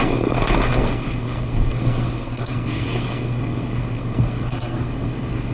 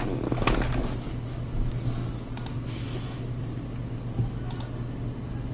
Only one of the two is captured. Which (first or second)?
second